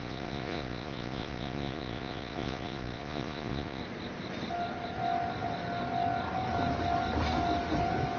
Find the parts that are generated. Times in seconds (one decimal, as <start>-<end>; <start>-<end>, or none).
0.0-3.8